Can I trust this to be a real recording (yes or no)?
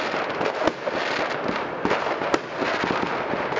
yes